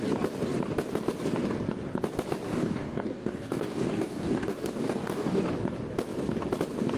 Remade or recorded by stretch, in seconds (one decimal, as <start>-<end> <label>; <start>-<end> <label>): 0.0-2.5 recorded; 2.5-5.4 remade; 5.4-7.0 recorded